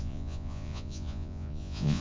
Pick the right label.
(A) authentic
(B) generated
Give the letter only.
B